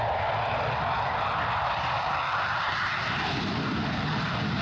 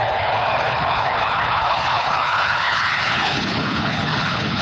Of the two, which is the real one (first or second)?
first